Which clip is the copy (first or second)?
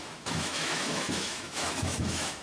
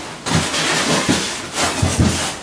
first